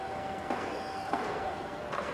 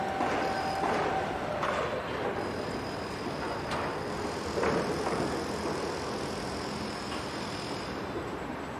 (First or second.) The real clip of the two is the second